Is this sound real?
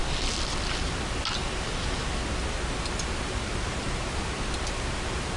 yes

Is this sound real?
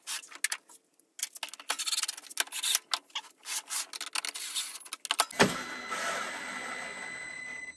yes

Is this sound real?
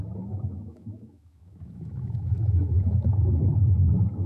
no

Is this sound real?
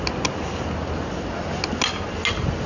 yes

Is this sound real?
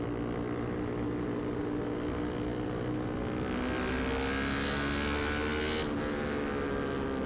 yes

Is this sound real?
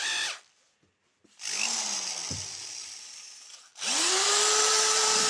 no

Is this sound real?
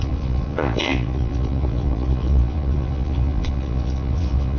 no